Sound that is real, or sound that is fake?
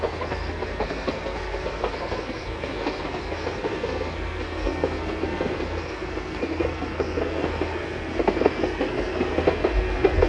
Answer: fake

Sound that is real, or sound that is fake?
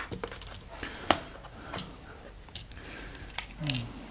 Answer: real